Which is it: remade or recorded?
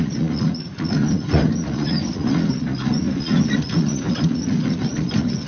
remade